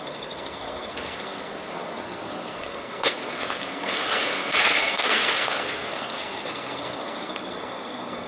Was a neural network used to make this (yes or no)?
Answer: yes